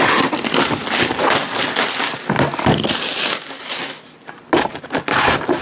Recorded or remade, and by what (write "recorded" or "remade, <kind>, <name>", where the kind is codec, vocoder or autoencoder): recorded